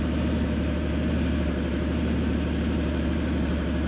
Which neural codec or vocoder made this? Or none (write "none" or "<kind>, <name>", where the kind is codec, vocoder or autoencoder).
vocoder, BigVGAN v2